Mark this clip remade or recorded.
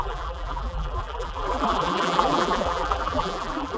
remade